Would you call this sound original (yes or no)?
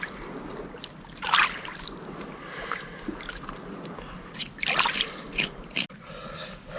yes